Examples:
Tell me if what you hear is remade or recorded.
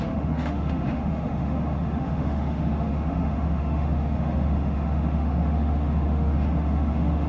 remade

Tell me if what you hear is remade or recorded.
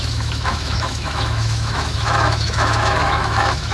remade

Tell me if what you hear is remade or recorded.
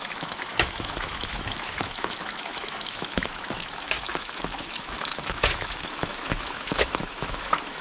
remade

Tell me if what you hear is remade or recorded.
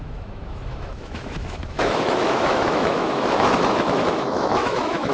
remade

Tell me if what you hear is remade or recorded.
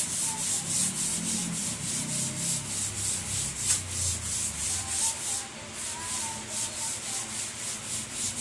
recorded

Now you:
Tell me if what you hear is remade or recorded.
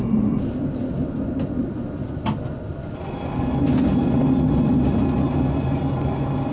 recorded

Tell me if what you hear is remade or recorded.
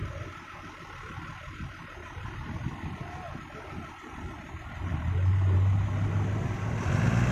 recorded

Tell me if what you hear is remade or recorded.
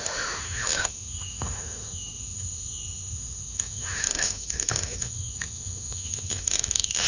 remade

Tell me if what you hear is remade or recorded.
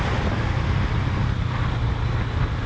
recorded